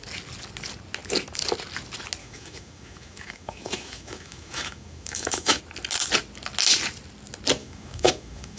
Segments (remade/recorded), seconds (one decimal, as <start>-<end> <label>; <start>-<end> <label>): 0.0-2.2 recorded; 2.2-5.6 remade; 5.6-7.6 recorded; 7.6-8.6 remade